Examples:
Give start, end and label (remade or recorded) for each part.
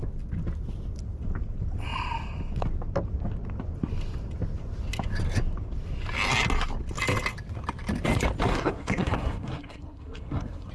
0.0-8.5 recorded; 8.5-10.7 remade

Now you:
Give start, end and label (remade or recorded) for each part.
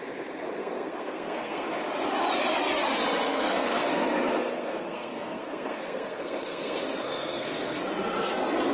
0.0-0.6 recorded; 0.6-1.7 remade; 1.7-3.3 recorded; 3.3-7.8 remade; 7.8-8.7 recorded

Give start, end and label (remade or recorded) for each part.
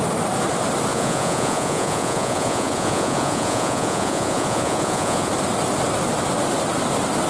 0.0-0.9 recorded; 0.9-5.3 remade; 5.3-7.3 recorded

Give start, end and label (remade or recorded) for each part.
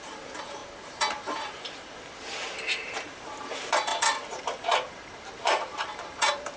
0.0-6.6 remade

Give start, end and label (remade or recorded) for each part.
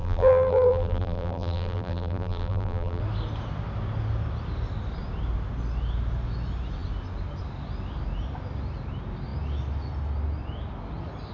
0.0-3.0 remade; 3.0-11.3 recorded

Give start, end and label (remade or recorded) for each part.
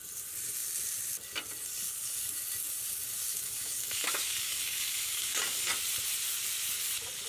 0.0-3.3 recorded; 3.3-5.7 remade; 5.7-7.3 recorded